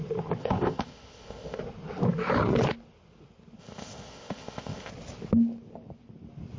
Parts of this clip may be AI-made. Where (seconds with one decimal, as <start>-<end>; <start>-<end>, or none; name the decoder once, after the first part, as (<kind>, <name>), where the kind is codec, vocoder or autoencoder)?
0.4-1.6 (codec, ZipCodec); 3.6-4.9